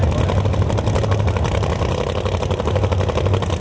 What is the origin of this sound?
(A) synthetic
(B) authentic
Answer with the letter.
B